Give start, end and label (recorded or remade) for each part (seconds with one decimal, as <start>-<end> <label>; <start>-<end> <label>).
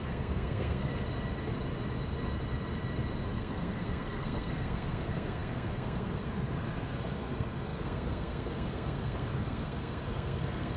0.0-0.9 remade; 0.9-3.3 recorded; 3.3-10.8 remade